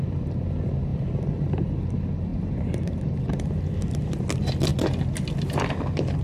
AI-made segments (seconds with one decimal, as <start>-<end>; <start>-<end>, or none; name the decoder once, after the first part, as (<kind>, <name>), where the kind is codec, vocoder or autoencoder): 0.9-1.6 (vocoder, BigVGAN v2); 2.3-3.4